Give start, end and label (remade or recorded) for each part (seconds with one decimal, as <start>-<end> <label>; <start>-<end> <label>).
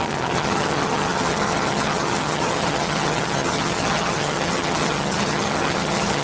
0.0-6.2 remade